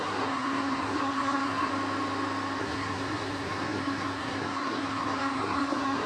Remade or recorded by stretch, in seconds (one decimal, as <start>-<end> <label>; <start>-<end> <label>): 0.0-1.7 remade; 1.7-2.6 recorded; 2.6-6.1 remade